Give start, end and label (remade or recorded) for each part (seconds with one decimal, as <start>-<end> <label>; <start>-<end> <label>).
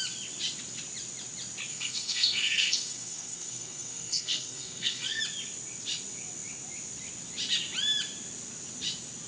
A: 0.0-1.7 recorded; 1.7-5.2 remade; 5.2-9.3 recorded